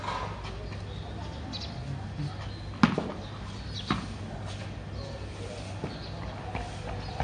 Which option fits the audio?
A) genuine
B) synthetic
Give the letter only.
A